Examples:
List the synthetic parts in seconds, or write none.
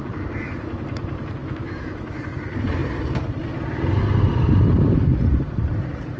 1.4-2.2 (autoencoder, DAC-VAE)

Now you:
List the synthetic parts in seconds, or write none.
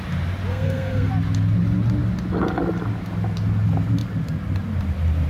0.5-1.1 (codec, SNAC)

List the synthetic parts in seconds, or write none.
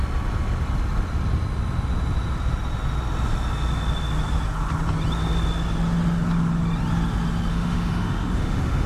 7.5-8.9 (autoencoder, DAC-VAE)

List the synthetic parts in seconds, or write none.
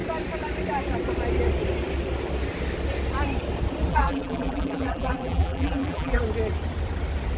3.9-6.2 (vocoder, BigVGAN v2)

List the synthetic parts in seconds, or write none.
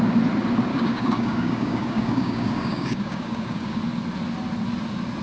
0.7-3.8 (codec, DAC)